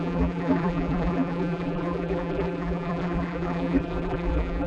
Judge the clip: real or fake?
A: fake